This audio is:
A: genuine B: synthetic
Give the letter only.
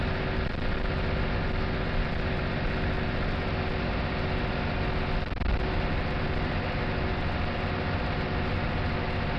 A